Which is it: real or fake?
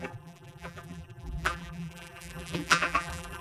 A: fake